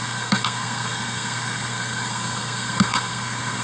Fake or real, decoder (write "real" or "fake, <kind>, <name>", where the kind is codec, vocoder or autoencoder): fake, codec, SNAC